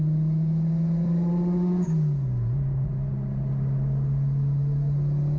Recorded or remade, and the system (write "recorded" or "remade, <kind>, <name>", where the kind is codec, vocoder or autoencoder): recorded